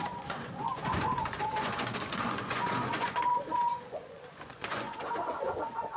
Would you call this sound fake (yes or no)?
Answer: yes